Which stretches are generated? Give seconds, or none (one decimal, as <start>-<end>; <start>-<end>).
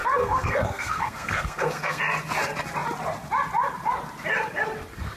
0.0-2.0